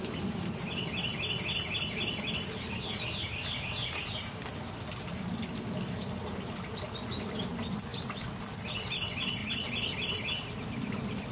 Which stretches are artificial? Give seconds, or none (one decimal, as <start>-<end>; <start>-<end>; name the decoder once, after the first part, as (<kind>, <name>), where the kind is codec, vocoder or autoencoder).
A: none